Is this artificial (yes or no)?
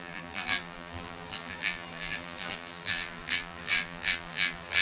yes